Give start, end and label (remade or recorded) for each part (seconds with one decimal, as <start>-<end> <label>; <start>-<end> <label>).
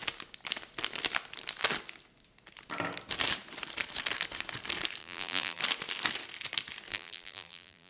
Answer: 0.0-5.0 recorded; 5.0-5.6 remade; 5.6-6.9 recorded; 6.9-7.9 remade